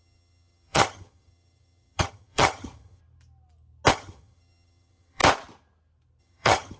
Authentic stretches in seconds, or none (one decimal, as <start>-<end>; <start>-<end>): 3.0-3.9; 5.2-6.2